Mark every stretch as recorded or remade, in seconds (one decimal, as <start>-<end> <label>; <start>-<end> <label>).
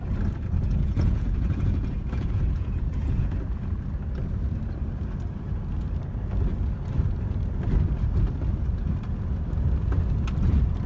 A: 0.0-0.6 recorded; 0.6-3.4 remade; 3.4-10.9 recorded